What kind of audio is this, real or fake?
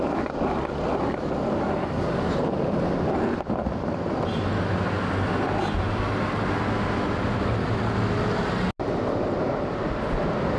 real